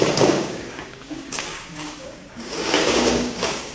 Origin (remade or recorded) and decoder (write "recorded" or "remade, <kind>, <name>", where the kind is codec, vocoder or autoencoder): remade, codec, DAC